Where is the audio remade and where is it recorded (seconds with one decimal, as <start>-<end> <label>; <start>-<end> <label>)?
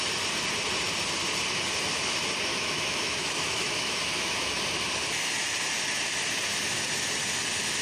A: 0.0-2.5 recorded; 2.5-4.6 remade; 4.6-7.8 recorded